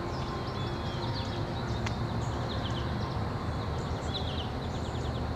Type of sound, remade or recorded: recorded